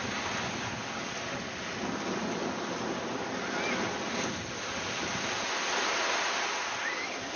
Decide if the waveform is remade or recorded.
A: recorded